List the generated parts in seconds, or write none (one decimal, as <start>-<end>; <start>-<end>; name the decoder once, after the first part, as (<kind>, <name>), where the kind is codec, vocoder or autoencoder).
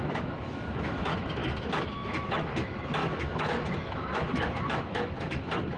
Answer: 0.0-5.8 (autoencoder, DAC-VAE)